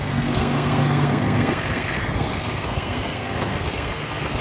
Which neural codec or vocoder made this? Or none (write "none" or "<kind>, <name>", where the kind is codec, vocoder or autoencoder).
codec, SNAC